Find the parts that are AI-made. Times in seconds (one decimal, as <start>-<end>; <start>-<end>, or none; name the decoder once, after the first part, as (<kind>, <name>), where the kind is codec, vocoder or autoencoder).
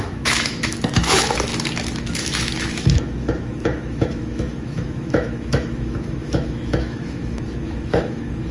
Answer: 0.0-1.5 (autoencoder, DAC-VAE); 2.0-8.5